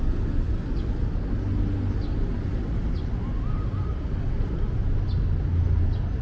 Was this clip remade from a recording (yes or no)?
no